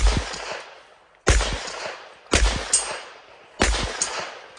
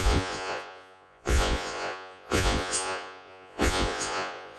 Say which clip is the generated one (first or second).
second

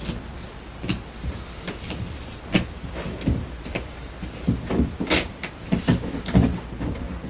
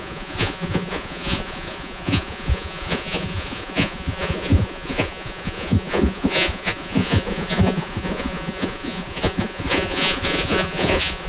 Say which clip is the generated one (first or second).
second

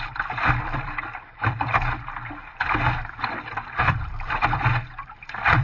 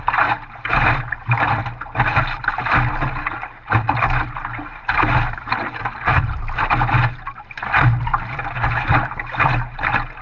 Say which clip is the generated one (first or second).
first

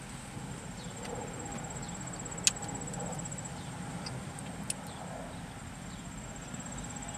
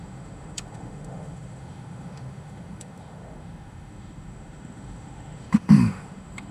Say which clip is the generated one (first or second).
second